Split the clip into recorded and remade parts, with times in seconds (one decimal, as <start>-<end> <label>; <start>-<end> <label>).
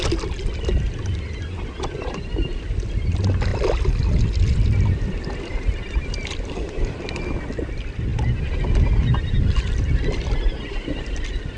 0.0-11.6 recorded